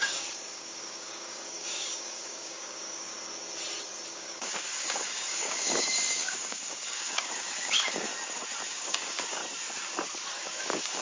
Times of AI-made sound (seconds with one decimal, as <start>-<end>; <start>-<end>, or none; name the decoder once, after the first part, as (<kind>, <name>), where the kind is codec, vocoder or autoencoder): 0.0-3.1 (codec, DAC); 4.1-8.1; 8.7-9.4; 10.5-11.0